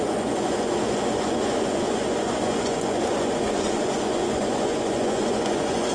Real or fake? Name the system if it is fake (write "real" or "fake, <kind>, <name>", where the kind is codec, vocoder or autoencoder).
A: fake, vocoder, Vocos